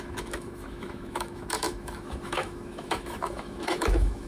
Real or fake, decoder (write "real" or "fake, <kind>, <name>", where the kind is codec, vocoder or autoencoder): fake, autoencoder, DAC-VAE